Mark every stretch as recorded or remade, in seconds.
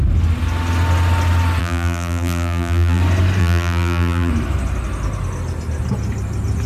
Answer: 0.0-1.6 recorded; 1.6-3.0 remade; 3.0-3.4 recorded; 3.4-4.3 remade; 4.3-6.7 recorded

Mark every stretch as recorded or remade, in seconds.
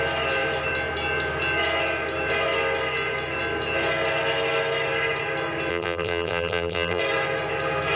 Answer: 0.0-5.7 recorded; 5.7-7.0 remade; 7.0-8.0 recorded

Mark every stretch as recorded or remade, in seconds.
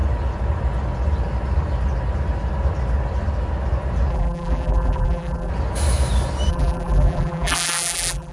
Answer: 0.0-4.1 recorded; 4.1-5.5 remade; 5.5-6.5 recorded; 6.5-8.3 remade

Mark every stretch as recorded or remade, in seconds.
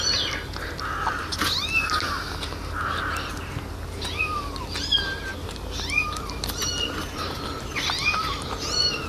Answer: 0.0-9.1 recorded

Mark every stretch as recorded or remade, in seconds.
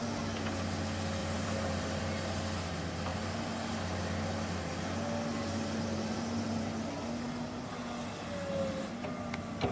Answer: 0.0-1.2 recorded; 1.2-2.0 remade; 2.0-5.3 recorded; 5.3-6.8 remade; 6.8-9.7 recorded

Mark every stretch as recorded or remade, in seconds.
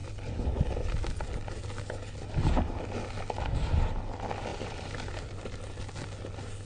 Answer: 0.0-4.5 recorded; 4.5-5.6 remade; 5.6-6.7 recorded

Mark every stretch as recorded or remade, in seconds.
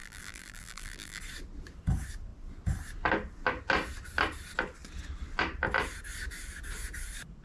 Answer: 0.0-1.2 remade; 1.2-7.4 recorded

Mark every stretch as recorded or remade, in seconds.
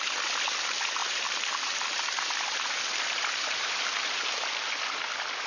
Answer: 0.0-1.0 recorded; 1.0-4.3 remade; 4.3-5.5 recorded